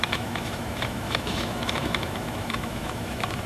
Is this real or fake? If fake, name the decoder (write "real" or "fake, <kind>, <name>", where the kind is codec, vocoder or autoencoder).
fake, autoencoder, DAC-VAE